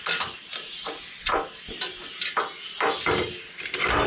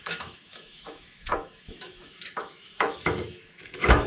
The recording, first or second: first